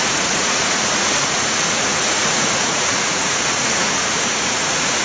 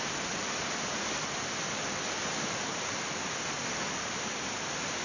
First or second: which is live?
second